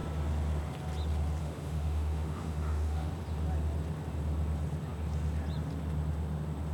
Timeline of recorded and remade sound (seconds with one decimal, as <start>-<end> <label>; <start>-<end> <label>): 0.0-1.4 recorded; 1.4-3.1 remade; 3.1-6.7 recorded